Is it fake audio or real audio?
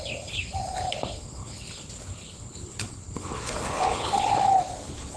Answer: fake